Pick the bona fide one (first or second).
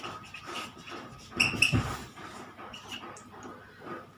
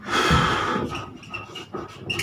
second